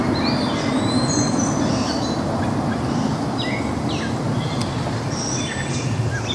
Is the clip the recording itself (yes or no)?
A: yes